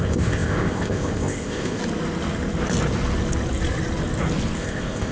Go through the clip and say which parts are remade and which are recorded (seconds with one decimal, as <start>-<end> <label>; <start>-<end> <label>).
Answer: 0.0-1.8 remade; 1.8-4.6 recorded; 4.6-5.1 remade